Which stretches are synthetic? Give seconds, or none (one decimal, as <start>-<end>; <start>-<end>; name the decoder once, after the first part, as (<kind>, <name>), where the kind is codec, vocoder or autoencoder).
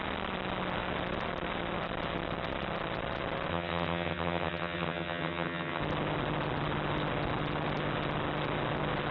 3.5-5.8 (vocoder, HiFi-GAN)